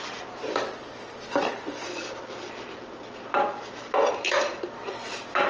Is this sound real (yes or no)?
yes